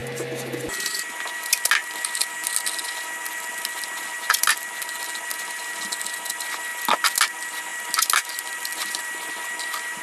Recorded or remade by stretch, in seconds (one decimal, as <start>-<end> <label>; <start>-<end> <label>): 0.0-10.0 recorded